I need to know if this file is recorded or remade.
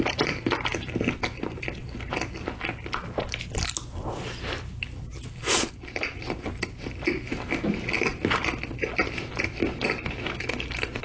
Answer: recorded